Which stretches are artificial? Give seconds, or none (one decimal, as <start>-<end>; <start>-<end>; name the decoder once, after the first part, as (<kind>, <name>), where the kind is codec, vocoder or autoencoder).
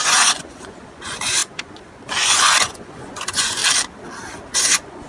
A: 0.0-3.6 (vocoder, Vocos); 4.5-5.1